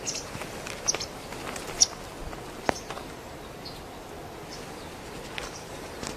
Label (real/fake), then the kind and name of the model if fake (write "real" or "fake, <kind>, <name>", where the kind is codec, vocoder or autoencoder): real